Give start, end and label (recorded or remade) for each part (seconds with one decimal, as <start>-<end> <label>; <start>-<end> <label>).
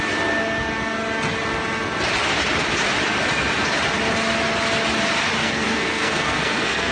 0.0-5.4 recorded; 5.4-6.9 remade